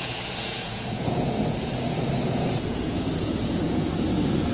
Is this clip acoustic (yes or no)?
no